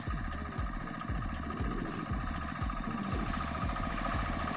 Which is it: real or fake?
real